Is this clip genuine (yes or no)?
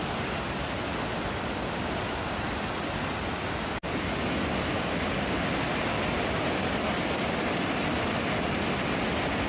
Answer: yes